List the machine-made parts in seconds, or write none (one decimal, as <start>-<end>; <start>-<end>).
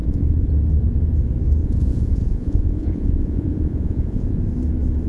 0.0-0.5; 1.6-4.4